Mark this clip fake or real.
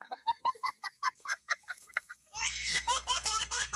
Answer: fake